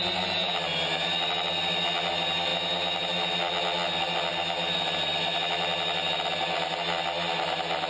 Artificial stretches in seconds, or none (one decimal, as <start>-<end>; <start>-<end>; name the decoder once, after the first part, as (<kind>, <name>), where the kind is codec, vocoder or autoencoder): none